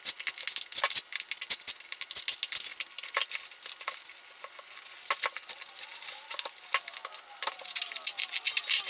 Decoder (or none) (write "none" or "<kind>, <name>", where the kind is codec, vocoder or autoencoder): none